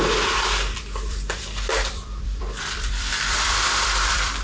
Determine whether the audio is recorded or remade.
remade